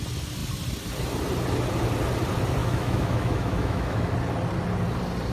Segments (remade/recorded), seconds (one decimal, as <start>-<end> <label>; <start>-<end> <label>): 0.0-2.6 recorded; 2.6-4.1 remade; 4.1-5.3 recorded